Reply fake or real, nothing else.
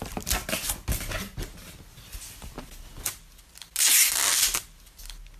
real